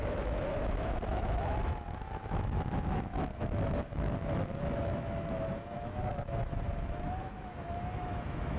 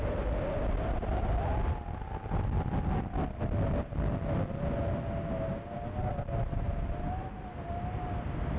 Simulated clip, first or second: first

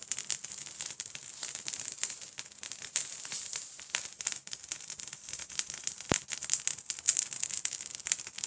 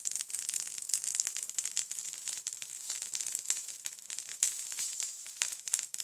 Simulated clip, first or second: second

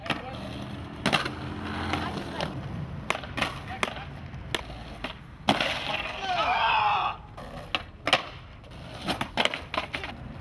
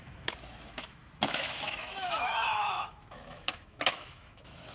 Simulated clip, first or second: second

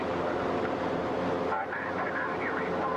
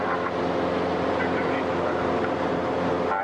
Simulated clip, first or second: first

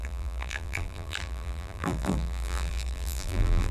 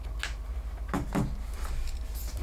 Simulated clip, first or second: first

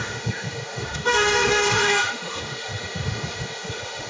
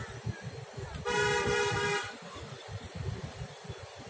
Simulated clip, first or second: first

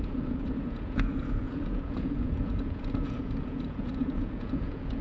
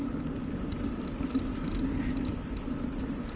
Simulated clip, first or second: first